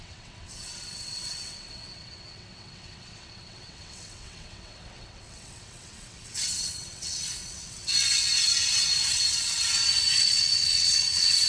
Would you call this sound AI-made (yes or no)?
yes